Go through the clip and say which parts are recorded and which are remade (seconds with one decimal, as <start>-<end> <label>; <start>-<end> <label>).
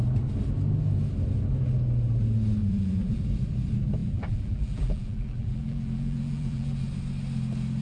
0.0-2.6 recorded; 2.6-3.2 remade; 3.2-4.0 recorded; 4.0-6.8 remade; 6.8-7.8 recorded